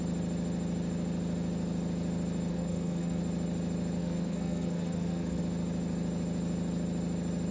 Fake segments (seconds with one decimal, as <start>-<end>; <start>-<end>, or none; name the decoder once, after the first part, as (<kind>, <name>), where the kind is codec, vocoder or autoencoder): 2.5-3.2 (codec, SNAC); 4.0-5.4